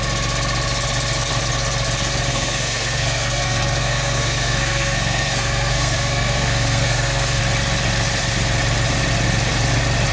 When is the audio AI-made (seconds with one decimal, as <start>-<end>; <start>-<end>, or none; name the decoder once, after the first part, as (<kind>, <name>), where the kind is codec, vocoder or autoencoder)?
2.3-7.4 (codec, SNAC)